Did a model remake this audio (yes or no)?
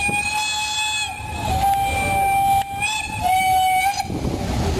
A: no